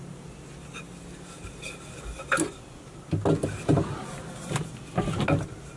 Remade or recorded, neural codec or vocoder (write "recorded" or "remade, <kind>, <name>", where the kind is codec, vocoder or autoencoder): recorded